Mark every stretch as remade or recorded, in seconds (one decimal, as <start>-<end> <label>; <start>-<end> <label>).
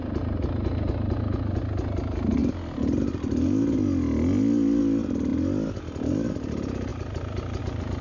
0.0-8.0 recorded